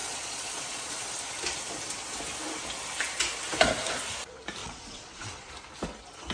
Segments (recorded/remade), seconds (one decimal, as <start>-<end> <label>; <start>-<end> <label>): 0.0-1.0 remade; 1.0-4.6 recorded; 4.6-5.5 remade; 5.5-6.3 recorded